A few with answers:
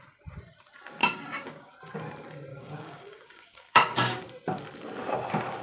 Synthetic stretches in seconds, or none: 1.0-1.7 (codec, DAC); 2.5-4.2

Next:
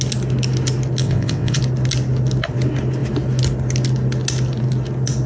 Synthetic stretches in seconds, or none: 1.0-1.6 (vocoder, WaveNeXt)

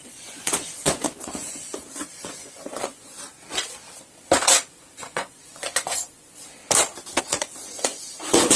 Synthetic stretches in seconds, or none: 0.0-3.1 (vocoder, Vocos); 5.0-6.6; 7.2-8.6

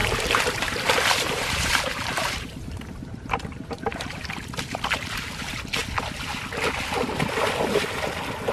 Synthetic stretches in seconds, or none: 0.0-4.3 (vocoder, BigVGAN v2)

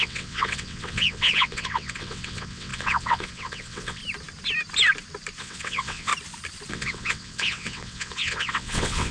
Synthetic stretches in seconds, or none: 0.0-4.0 (vocoder, WaveNeXt); 5.4-6.1; 6.7-9.1

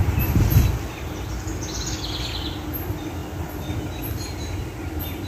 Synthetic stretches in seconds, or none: none